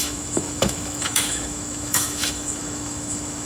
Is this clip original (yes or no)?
no